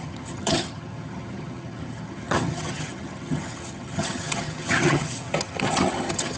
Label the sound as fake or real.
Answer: fake